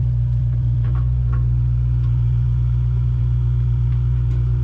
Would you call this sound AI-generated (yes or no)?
yes